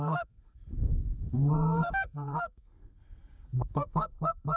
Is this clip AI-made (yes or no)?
yes